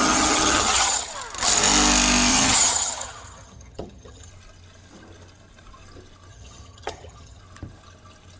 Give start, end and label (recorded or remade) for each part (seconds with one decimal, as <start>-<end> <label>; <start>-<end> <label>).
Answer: 0.0-1.1 remade; 1.1-2.3 recorded; 2.3-4.3 remade; 4.3-6.3 recorded; 6.3-7.4 remade; 7.4-8.4 recorded